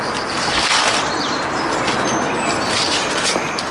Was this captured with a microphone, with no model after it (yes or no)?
no